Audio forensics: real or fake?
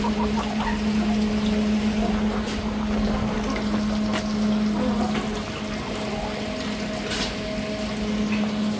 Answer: real